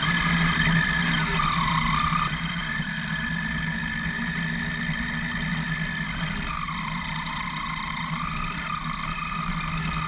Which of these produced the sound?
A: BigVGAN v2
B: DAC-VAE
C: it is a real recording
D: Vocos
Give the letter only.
C